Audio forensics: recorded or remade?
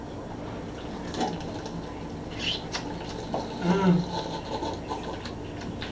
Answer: recorded